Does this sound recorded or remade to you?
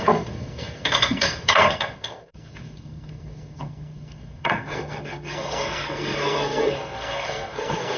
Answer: remade